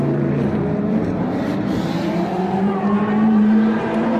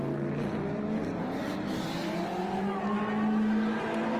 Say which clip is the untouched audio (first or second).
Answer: second